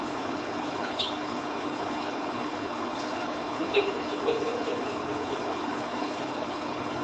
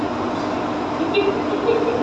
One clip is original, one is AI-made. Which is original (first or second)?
second